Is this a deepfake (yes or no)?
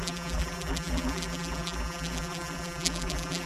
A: yes